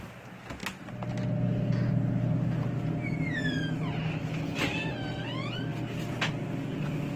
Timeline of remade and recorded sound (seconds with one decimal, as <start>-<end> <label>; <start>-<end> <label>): 0.0-7.2 recorded